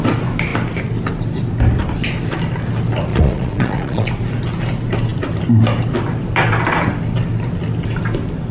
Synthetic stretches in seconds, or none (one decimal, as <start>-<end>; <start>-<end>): 3.1-4.1